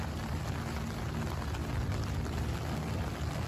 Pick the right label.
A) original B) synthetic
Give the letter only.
A